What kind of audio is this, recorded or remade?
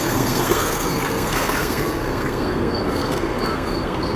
remade